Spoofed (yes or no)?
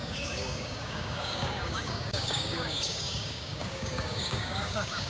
yes